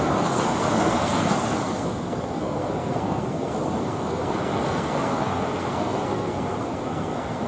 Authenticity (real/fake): fake